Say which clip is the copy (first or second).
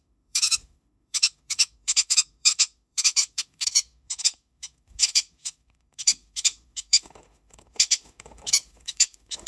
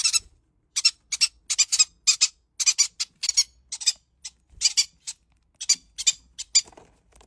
first